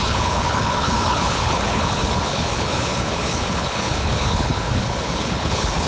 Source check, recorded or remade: remade